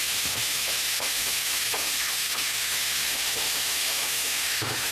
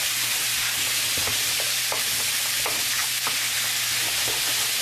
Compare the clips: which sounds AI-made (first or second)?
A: first